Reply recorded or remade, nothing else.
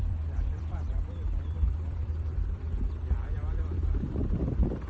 remade